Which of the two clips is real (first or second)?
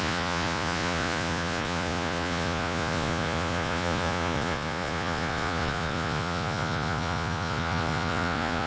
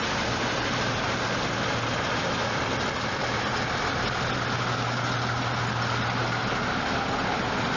second